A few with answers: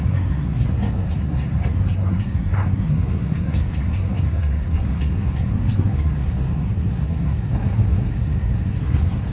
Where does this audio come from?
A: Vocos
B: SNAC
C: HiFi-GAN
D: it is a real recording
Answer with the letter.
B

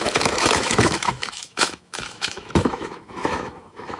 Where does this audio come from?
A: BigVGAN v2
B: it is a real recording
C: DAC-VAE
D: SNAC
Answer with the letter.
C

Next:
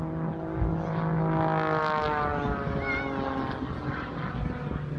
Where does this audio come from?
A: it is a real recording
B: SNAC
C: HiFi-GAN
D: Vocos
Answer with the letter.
A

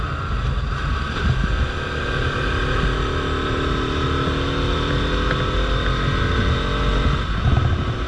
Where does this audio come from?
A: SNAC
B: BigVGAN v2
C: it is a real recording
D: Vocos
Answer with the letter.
C